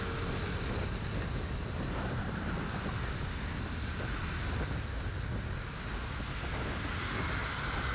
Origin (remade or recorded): recorded